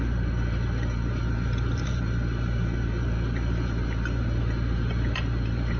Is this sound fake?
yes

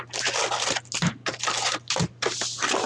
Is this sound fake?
no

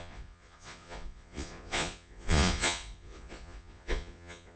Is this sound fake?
yes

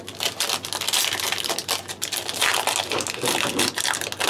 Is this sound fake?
no